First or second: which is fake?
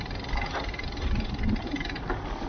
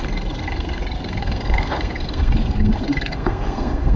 second